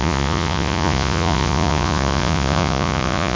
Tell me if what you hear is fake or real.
fake